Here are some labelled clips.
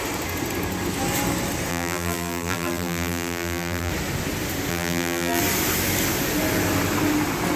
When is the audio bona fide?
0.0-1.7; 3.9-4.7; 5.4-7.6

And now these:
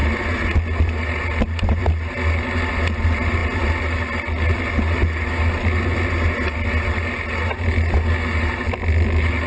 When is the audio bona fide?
0.0-9.5

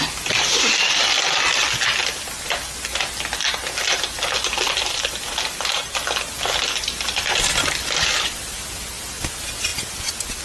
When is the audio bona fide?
0.0-10.4

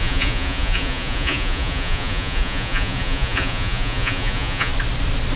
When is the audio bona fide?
4.7-5.4

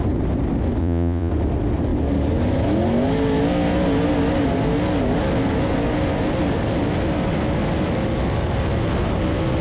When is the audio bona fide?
0.0-0.8; 1.3-9.6